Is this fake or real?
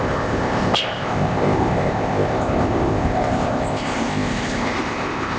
fake